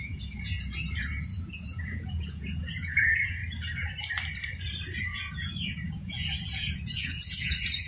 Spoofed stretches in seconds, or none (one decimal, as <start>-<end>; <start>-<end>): 0.0-3.4; 5.0-7.9

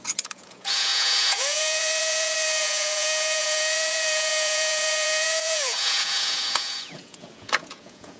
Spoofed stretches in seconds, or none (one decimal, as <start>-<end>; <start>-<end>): 0.0-8.2

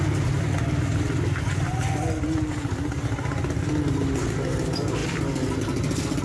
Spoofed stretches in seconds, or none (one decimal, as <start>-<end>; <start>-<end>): none

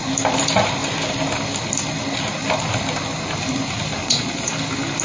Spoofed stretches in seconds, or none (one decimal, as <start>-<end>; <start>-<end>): 4.0-4.5